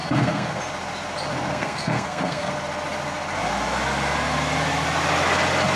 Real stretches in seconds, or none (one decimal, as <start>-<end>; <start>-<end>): 0.6-1.5; 2.5-5.8